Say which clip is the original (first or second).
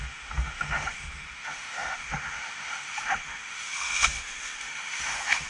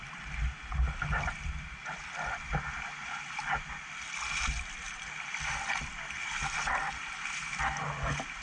second